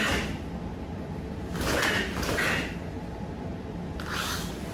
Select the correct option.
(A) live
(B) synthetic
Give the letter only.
A